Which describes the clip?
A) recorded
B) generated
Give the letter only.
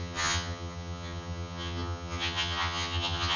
B